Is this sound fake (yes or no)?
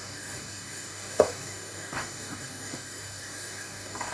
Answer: yes